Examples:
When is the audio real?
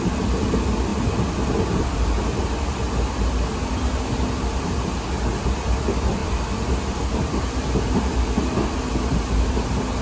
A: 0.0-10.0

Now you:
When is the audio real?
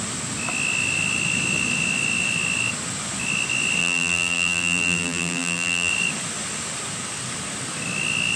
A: 0.0-3.8; 5.9-8.4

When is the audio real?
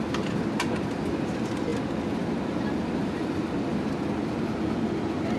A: 0.0-5.4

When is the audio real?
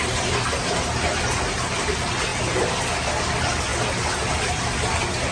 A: 0.0-5.3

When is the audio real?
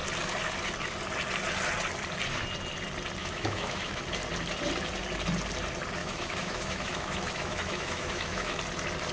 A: 0.0-3.2; 4.0-6.0; 8.6-9.1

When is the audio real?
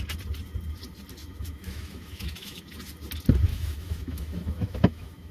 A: 0.0-1.2; 2.6-3.5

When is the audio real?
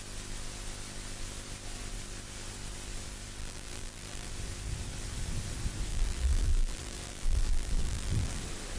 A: 0.0-3.4; 4.3-5.9; 8.4-8.8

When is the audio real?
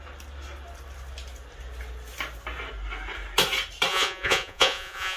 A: 0.0-3.9